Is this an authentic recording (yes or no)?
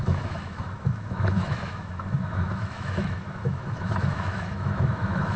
no